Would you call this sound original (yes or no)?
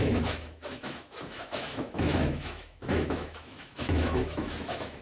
no